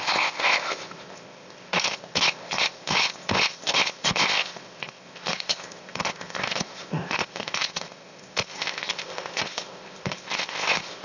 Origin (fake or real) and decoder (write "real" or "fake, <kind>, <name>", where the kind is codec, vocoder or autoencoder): fake, codec, ZipCodec